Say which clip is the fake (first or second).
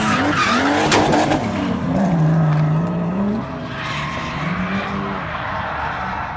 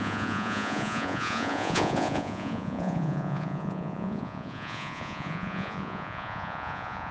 second